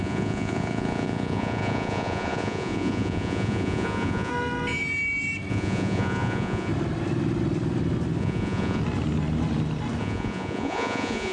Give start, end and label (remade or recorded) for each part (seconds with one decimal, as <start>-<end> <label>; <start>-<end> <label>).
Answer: 0.0-4.3 remade; 4.3-5.5 recorded; 5.5-6.7 remade; 6.7-8.2 recorded; 8.2-8.8 remade; 8.8-10.0 recorded; 10.0-11.3 remade